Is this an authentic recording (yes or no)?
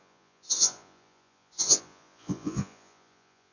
no